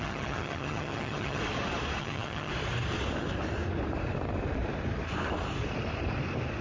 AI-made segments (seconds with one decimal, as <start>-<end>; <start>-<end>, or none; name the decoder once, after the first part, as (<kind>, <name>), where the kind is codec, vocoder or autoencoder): 0.0-1.4 (vocoder, HiFi-GAN); 2.0-2.5